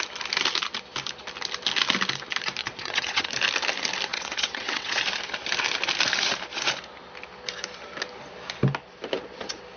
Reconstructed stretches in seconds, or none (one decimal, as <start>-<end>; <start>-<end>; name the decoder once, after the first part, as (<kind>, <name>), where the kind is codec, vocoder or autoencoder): 2.6-3.3 (vocoder, WaveNeXt); 4.1-5.0